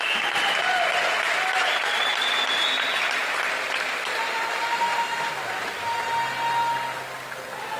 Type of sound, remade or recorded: recorded